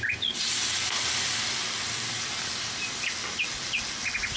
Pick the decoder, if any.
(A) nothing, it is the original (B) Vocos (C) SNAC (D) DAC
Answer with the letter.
A